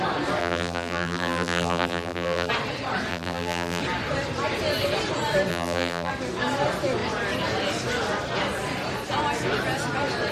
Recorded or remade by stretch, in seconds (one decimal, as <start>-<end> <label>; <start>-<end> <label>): 0.0-0.4 recorded; 0.4-2.5 remade; 2.5-3.1 recorded; 3.1-3.8 remade; 3.8-5.5 recorded; 5.5-6.1 remade; 6.1-10.3 recorded